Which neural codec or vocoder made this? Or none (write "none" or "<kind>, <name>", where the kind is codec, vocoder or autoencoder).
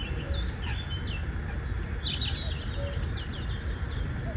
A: none